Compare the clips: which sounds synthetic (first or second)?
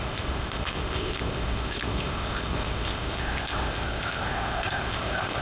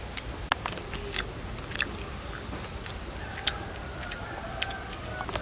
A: first